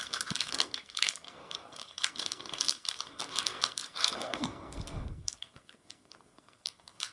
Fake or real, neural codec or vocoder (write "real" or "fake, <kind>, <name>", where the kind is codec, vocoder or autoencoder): fake, codec, SNAC